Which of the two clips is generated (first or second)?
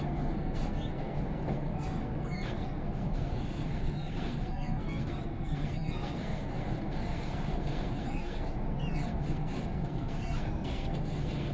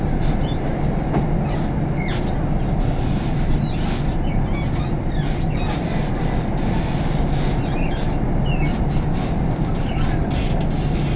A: first